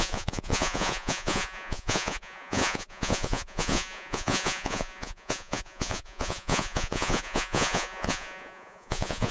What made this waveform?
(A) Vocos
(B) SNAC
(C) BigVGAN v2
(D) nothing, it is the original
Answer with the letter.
A